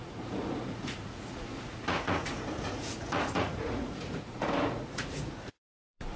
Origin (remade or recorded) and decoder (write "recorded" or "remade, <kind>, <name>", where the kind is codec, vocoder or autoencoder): remade, vocoder, Vocos